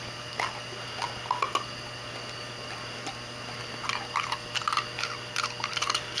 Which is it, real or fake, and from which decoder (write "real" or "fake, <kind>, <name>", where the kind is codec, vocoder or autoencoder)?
real